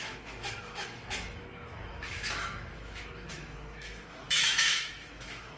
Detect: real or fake fake